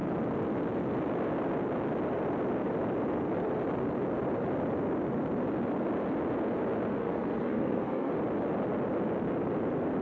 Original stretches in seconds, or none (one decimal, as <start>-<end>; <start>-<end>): 0.0-6.9; 8.1-10.0